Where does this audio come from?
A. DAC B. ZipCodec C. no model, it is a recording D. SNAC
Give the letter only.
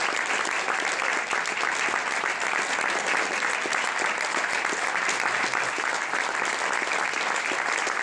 C